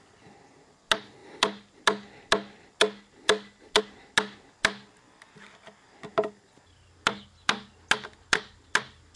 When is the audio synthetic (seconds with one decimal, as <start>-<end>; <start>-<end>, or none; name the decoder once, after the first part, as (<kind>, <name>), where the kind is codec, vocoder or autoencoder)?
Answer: none